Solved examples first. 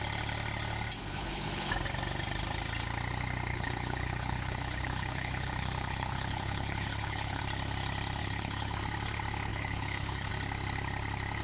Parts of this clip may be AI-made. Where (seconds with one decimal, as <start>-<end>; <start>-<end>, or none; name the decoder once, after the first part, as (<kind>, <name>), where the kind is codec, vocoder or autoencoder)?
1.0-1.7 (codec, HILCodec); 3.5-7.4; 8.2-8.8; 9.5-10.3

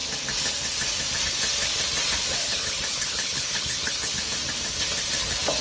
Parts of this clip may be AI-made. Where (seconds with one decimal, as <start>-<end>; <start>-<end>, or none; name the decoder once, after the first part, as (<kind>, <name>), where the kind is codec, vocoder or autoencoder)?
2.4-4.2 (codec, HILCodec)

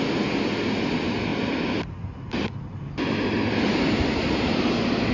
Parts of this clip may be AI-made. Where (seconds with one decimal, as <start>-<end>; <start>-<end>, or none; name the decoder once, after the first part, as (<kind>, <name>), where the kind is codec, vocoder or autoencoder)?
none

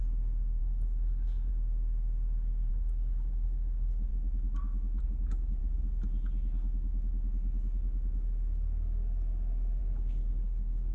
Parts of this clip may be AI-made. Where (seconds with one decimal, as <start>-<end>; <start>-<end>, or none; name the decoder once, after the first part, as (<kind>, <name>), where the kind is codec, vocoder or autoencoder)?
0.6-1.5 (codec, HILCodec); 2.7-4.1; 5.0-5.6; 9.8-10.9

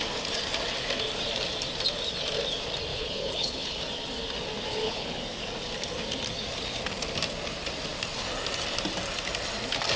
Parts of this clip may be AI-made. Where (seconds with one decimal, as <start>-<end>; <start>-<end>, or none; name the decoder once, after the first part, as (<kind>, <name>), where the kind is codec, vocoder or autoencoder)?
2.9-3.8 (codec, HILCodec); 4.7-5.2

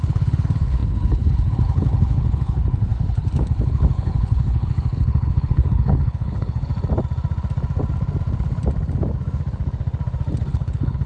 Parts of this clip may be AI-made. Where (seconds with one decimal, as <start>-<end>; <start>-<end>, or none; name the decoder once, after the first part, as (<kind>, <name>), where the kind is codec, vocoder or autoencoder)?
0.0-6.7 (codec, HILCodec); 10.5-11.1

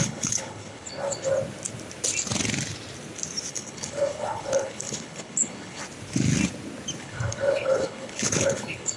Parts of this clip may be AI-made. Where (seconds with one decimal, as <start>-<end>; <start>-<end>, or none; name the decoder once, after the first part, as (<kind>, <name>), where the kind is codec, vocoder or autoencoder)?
0.0-1.3 (codec, HILCodec); 3.5-5.8; 7.0-9.0

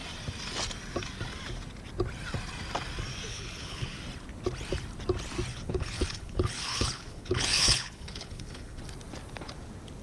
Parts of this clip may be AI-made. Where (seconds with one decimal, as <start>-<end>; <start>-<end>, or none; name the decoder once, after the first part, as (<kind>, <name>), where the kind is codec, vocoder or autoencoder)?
3.3-4.0 (codec, HILCodec); 5.5-8.8